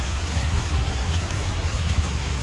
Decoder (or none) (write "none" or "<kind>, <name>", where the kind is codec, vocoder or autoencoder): codec, SNAC